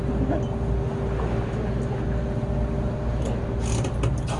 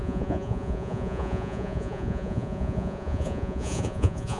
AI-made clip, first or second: second